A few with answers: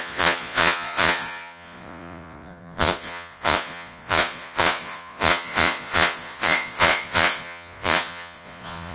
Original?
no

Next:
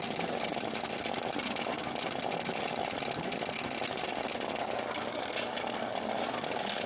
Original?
yes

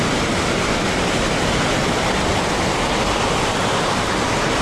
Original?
yes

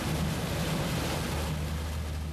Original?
yes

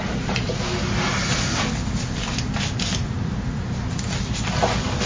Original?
yes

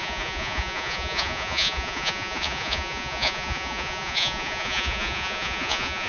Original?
no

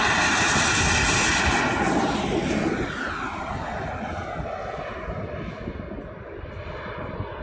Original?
yes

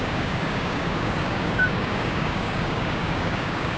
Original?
no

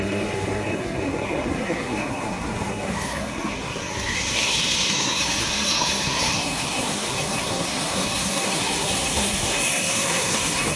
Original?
no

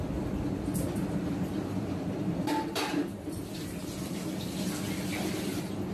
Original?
no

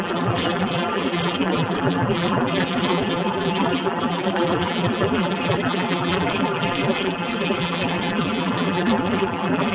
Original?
no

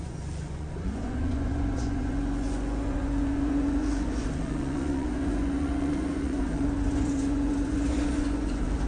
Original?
no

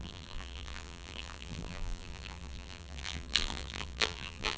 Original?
no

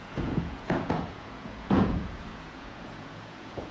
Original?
no